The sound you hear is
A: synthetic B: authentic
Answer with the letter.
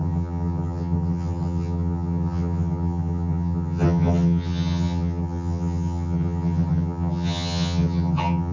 A